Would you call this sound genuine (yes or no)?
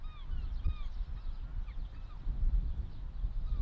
yes